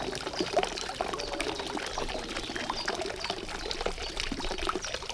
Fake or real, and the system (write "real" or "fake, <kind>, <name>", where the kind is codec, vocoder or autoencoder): real